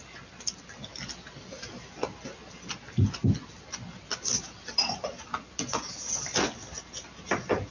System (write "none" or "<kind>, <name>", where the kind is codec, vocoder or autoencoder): none